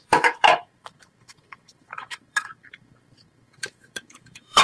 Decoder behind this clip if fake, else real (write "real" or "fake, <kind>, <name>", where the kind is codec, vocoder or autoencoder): fake, autoencoder, DAC-VAE